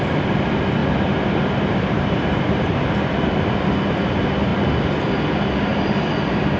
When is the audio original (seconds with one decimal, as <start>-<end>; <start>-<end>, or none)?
0.0-0.8; 2.8-6.6